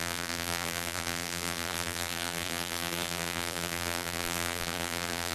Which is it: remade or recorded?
remade